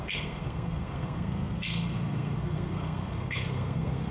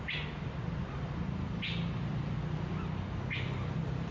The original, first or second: second